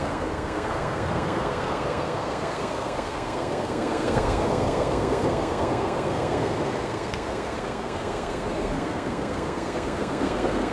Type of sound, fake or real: fake